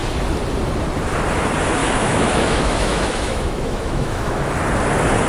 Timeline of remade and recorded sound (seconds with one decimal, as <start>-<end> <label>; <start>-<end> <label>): 0.0-1.8 recorded; 1.8-4.5 remade; 4.5-5.3 recorded